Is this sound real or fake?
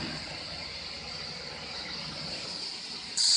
real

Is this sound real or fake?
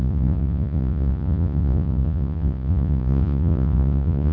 fake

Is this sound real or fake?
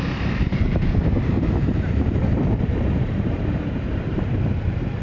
fake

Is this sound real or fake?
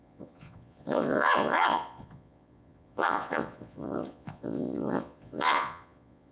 fake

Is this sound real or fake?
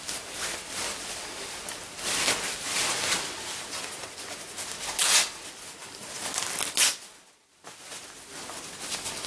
real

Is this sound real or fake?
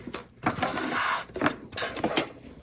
real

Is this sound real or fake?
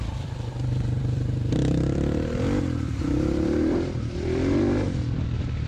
fake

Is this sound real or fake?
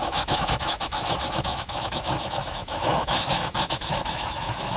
fake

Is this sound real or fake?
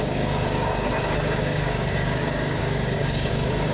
fake